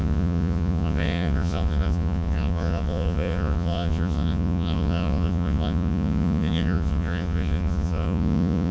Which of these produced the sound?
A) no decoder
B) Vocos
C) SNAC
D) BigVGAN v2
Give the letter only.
B